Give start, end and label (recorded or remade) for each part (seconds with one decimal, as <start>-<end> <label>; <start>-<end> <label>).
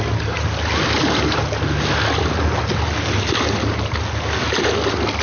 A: 0.0-5.2 recorded